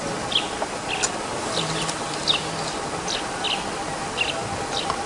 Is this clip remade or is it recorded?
recorded